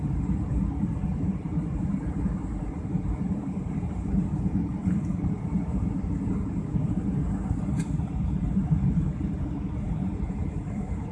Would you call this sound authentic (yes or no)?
no